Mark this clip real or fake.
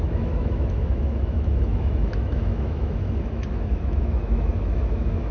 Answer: fake